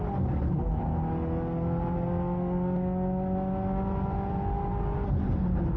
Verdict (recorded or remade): recorded